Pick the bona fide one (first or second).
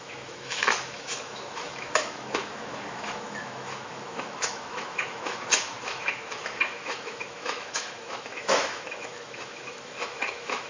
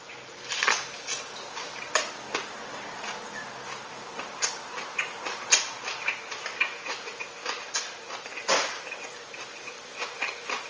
second